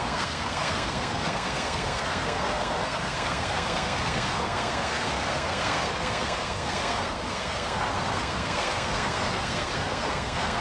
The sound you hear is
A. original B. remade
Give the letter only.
B